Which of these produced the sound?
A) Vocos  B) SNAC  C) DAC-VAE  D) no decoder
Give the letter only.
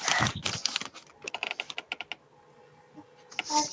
D